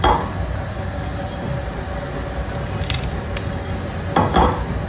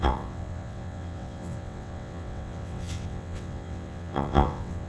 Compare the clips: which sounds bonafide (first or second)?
first